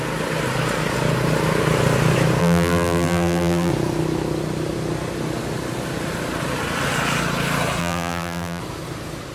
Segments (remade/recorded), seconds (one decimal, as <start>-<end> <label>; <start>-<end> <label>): 0.0-2.4 recorded; 2.4-3.7 remade; 3.7-7.8 recorded; 7.8-8.6 remade; 8.6-9.3 recorded